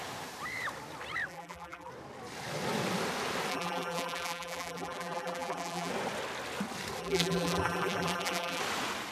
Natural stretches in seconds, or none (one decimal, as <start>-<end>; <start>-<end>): 0.0-1.3; 1.9-3.5; 5.9-7.0; 8.6-9.1

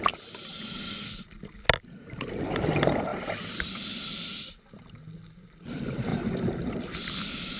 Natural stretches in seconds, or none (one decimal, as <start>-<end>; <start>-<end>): 0.0-3.1; 4.7-6.1

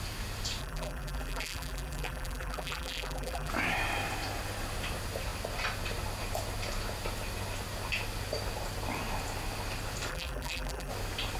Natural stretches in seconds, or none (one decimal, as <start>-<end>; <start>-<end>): 0.0-0.6; 3.5-10.1; 10.9-11.4